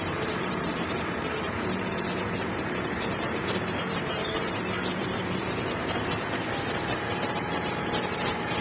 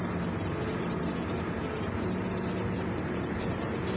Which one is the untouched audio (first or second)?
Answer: second